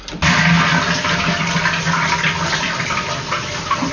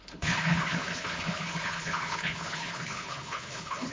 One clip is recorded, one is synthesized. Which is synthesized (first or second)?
second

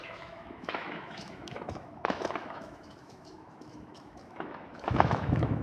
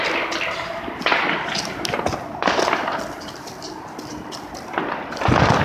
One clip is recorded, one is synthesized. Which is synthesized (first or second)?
first